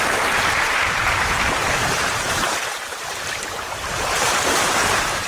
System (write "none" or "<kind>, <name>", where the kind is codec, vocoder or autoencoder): vocoder, BigVGAN v2